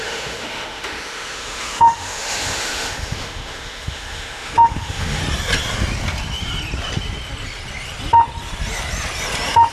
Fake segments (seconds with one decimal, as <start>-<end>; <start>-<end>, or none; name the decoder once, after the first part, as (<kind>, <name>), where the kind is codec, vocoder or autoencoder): 0.0-5.2 (autoencoder, DAC-VAE)